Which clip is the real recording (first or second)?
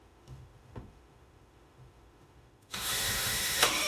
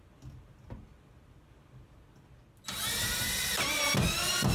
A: second